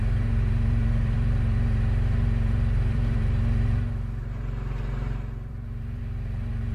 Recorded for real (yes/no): no